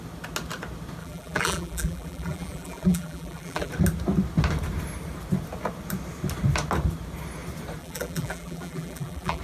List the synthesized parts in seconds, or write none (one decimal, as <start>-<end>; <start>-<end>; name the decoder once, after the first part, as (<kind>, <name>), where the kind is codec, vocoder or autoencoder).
1.0-3.7 (vocoder, BigVGAN v2); 7.8-9.4